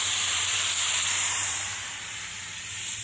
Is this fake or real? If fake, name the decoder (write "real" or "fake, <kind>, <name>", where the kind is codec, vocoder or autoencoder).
fake, vocoder, BigVGAN v2